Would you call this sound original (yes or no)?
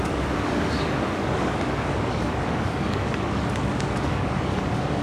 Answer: no